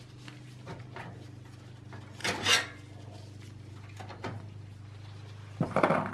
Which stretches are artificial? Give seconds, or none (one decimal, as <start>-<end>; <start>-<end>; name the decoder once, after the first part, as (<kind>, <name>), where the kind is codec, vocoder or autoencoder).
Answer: none